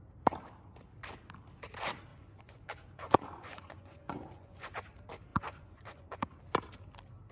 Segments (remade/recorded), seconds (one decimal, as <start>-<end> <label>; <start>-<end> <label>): 0.0-2.1 recorded; 2.1-4.7 remade; 4.7-5.3 recorded; 5.3-6.4 remade; 6.4-7.3 recorded